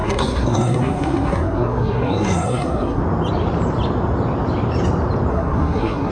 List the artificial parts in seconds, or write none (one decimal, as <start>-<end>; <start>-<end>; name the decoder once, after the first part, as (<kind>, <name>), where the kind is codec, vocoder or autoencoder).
0.0-3.0 (codec, SNAC); 5.3-6.1